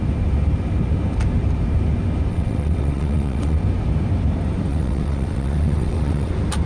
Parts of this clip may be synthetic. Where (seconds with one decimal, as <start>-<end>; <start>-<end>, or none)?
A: 2.3-3.6; 4.7-6.3